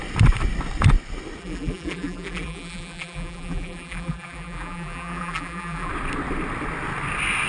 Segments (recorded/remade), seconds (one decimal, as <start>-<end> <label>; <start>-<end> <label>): 0.0-1.4 recorded; 1.4-5.9 remade; 5.9-7.5 recorded